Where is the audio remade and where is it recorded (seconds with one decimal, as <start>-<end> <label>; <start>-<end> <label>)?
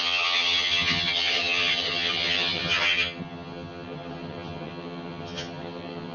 0.0-6.1 remade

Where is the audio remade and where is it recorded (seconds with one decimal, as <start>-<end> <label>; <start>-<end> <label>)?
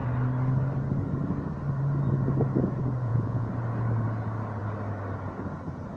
0.0-3.0 recorded; 3.0-3.5 remade; 3.5-6.0 recorded